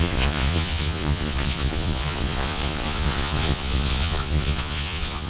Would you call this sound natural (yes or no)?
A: no